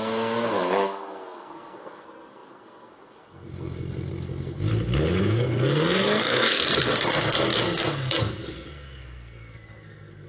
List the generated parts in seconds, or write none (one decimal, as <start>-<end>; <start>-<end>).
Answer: 0.0-4.7; 5.2-10.3